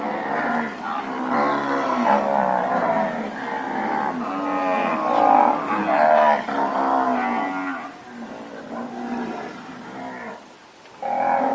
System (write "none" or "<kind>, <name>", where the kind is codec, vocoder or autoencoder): none